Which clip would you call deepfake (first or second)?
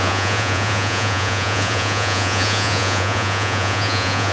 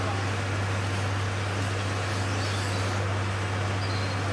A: first